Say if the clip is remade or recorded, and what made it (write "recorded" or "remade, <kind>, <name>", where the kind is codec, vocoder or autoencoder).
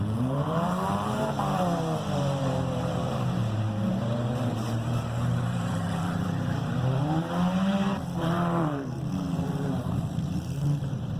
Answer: remade, vocoder, BigVGAN v2